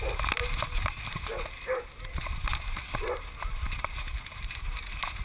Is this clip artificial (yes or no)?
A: no